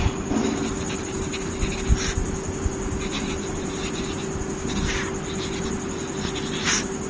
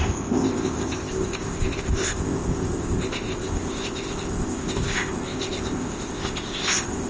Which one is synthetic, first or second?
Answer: second